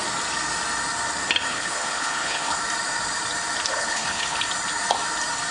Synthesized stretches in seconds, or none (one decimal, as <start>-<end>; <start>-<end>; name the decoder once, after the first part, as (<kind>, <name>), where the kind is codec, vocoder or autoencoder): 1.5-2.6 (codec, HILCodec); 3.7-4.4